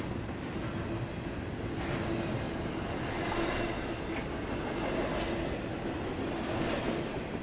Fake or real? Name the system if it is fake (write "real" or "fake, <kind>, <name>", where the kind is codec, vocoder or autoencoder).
real